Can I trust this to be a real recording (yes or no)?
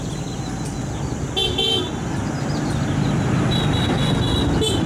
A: yes